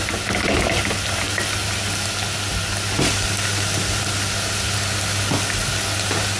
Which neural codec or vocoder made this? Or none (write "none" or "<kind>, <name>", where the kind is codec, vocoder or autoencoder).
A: none